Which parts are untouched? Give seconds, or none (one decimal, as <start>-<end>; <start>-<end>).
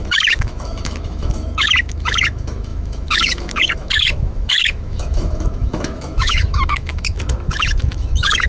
none